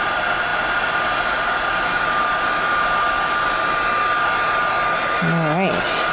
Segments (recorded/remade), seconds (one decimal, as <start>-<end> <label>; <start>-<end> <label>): 0.0-6.1 recorded